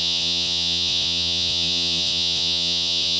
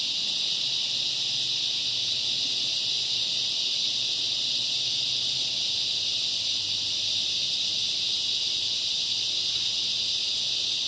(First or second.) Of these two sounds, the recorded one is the second